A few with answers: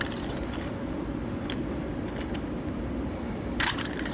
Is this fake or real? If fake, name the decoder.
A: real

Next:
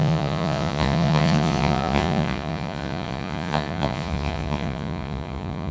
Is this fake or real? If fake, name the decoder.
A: fake, vocoder, Vocos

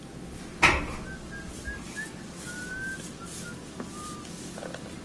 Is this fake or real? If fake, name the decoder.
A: real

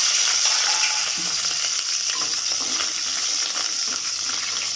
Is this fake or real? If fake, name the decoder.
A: real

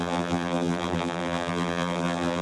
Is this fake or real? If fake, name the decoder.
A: fake, vocoder, BigVGAN v2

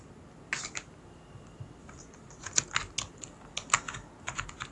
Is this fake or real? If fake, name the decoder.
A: real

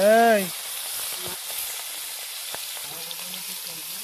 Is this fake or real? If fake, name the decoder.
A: real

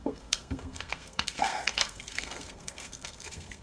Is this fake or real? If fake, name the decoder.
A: fake, codec, SNAC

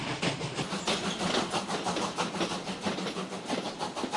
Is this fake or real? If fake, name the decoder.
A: real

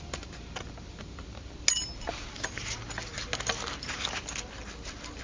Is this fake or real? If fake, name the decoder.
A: real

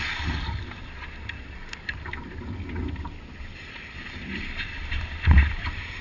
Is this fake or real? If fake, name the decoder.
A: real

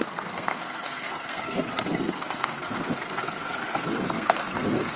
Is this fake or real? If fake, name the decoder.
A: fake, codec, SNAC